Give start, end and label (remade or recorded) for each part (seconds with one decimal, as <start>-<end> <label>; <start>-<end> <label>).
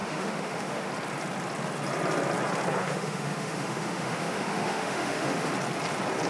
0.0-0.9 remade; 0.9-2.8 recorded; 2.8-5.5 remade; 5.5-6.3 recorded